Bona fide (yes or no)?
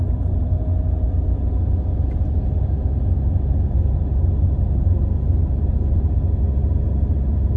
yes